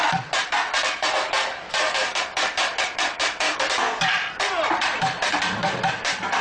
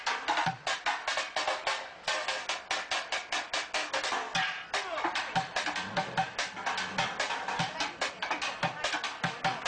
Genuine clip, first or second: second